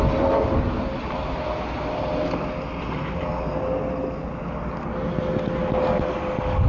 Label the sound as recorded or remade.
recorded